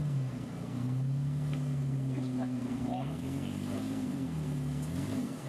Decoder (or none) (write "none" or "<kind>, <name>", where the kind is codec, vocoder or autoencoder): codec, SNAC